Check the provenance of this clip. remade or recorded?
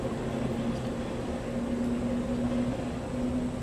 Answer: recorded